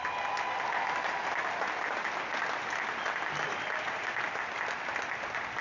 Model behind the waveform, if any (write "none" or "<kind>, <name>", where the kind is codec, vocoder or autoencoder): none